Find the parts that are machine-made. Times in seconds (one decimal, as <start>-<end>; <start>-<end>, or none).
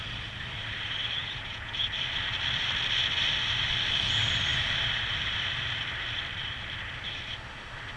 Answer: 1.2-1.7